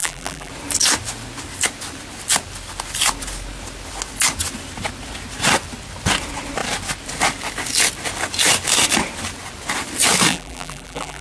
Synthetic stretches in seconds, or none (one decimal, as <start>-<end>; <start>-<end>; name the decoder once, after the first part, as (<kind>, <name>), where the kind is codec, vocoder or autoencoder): 0.0-0.5 (vocoder, BigVGAN v2); 10.3-11.2